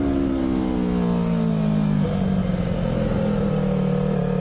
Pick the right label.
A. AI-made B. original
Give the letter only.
B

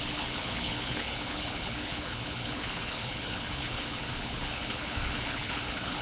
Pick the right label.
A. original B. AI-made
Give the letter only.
B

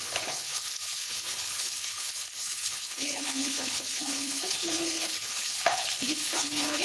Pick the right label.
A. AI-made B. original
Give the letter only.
A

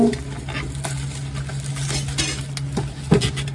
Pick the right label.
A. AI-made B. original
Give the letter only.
B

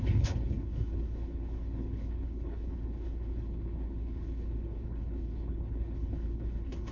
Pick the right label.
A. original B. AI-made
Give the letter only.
B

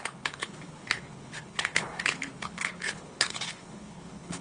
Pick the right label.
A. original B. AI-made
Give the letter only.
B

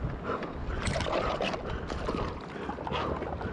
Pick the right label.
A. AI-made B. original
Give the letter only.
B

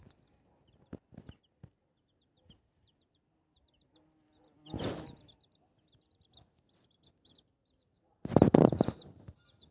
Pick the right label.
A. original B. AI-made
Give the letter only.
A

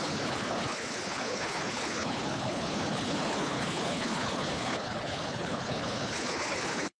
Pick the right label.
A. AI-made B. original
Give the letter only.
A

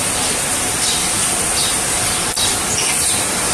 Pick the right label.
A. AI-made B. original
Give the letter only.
B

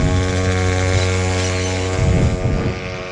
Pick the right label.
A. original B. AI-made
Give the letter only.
A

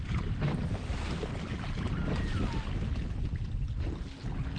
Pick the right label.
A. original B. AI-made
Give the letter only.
A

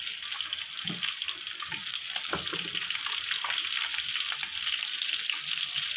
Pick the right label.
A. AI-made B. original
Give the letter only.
B